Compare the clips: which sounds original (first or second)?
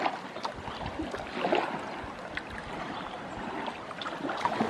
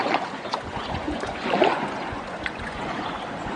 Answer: first